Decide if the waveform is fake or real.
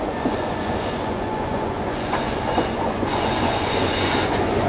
fake